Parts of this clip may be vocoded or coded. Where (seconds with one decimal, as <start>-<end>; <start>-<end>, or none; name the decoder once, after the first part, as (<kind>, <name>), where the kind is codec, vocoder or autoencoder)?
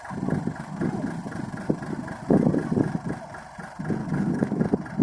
4.0-4.6 (codec, DAC)